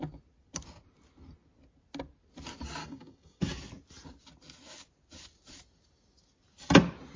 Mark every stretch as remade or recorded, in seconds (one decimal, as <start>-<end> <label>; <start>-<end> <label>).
0.0-2.8 recorded; 2.8-3.4 remade; 3.4-7.2 recorded